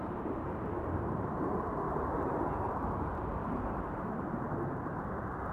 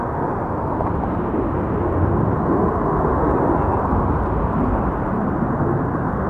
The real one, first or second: second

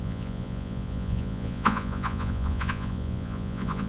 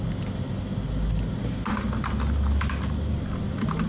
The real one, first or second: second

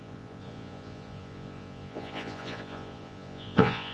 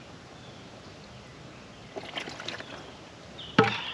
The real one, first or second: second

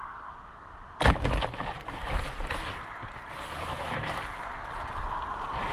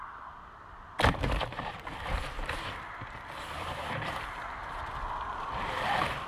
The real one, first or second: first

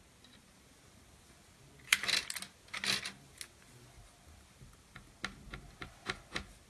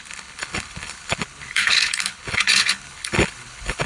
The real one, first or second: first